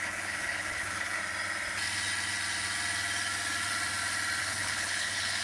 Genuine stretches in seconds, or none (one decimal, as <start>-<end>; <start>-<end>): 1.2-4.4